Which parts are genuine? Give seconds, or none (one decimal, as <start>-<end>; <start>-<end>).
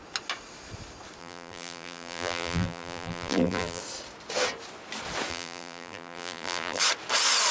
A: 0.0-1.2; 3.8-5.3; 6.8-7.5